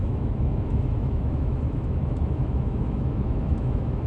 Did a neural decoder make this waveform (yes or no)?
yes